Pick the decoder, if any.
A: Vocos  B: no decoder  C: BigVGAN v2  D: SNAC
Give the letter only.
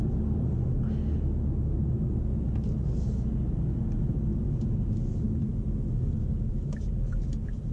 B